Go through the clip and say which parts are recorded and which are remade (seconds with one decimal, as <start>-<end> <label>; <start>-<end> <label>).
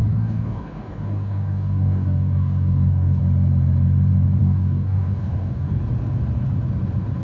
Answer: 0.0-3.2 remade; 3.2-4.4 recorded; 4.4-5.8 remade; 5.8-7.2 recorded